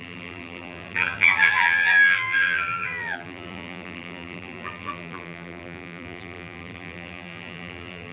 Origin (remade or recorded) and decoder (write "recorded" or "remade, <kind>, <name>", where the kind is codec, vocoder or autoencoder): remade, vocoder, BigVGAN v2